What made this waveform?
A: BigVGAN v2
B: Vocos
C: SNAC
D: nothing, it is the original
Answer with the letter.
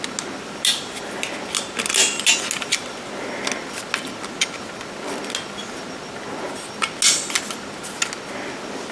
D